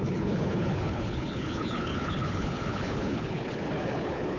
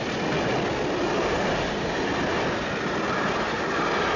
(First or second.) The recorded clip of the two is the second